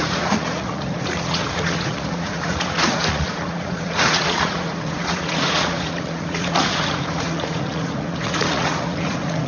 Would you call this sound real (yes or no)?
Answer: no